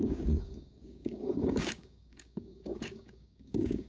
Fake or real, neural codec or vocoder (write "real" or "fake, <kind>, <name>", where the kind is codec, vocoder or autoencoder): fake, codec, DAC